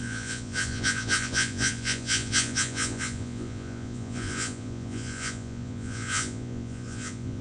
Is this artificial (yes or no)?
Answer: yes